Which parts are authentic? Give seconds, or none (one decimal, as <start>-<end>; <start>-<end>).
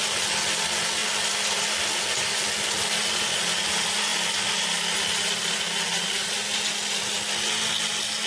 0.0-8.3